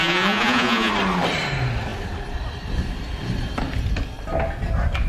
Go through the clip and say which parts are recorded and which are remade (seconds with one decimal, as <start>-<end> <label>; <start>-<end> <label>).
0.0-0.9 remade; 0.9-5.1 recorded